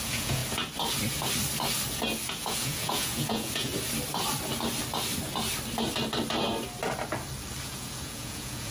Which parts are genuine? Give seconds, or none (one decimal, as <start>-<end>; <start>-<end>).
0.4-2.3; 3.7-7.6